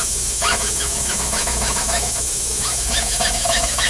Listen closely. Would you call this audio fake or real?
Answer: fake